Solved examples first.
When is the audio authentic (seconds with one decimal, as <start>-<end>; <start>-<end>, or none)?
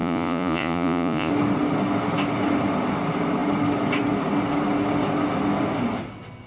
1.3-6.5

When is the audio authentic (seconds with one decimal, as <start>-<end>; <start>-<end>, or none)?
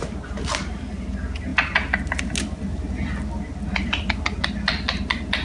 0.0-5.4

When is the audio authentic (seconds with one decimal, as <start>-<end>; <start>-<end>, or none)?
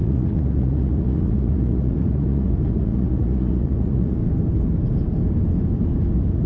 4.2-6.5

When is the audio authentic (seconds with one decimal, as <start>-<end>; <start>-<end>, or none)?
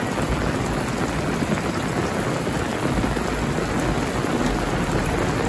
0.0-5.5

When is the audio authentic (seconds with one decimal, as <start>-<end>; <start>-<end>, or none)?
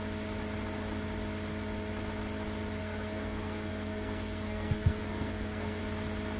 0.0-2.8; 5.8-6.4